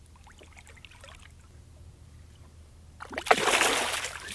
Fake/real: real